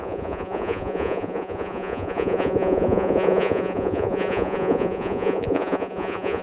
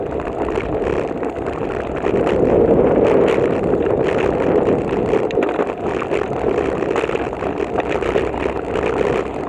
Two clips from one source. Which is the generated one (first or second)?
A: first